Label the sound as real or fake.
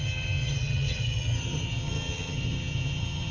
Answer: fake